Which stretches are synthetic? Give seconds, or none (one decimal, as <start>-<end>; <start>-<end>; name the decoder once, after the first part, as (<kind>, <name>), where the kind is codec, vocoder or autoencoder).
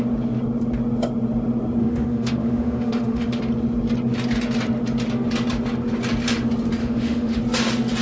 1.8-3.4 (autoencoder, DAC-VAE); 6.8-7.4